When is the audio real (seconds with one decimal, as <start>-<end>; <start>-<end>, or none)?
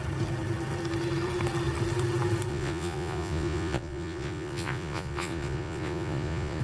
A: 0.0-2.5